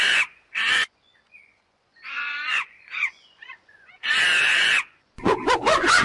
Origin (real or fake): fake